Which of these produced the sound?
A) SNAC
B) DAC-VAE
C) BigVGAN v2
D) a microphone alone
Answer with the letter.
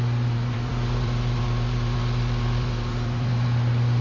C